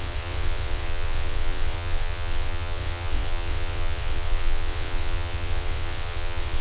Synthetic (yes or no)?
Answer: yes